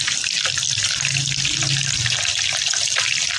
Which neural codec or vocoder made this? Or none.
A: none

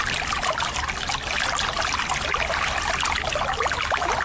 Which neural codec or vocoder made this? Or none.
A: none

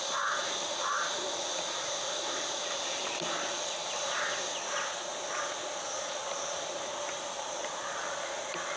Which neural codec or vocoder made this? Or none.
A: none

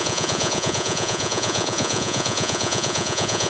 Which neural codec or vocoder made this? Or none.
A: vocoder, Vocos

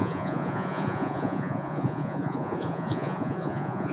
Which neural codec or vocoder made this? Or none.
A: vocoder, Vocos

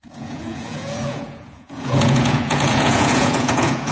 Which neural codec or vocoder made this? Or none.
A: vocoder, Vocos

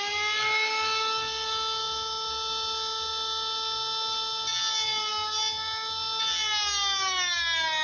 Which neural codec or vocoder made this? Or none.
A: none